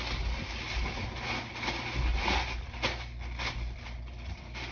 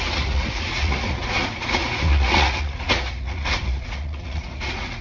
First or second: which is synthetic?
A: second